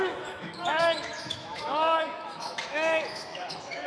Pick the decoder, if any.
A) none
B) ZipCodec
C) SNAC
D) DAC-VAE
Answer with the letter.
D